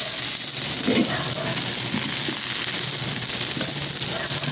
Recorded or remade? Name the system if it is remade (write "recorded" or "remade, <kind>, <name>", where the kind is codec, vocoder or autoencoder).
recorded